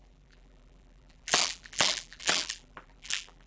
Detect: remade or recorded remade